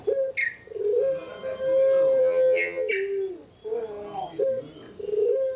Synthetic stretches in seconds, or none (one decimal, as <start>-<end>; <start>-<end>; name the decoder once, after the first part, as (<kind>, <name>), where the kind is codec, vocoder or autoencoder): 2.2-2.9 (vocoder, HiFi-GAN)